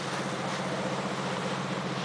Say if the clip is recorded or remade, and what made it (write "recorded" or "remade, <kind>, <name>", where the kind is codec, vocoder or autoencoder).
recorded